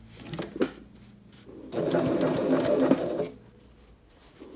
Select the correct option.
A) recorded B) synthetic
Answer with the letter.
A